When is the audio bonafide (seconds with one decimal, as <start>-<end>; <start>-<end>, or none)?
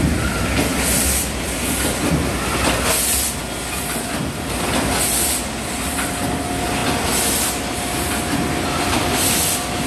0.0-9.9